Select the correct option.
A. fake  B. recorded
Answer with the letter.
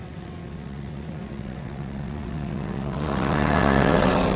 A